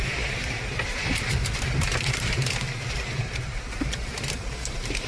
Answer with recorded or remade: remade